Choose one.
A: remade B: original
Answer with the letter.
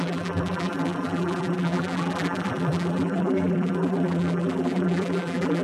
A